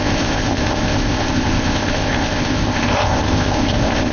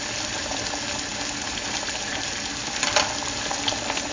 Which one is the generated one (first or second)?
first